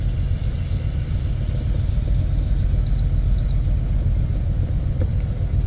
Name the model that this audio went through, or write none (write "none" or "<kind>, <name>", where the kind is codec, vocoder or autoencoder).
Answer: none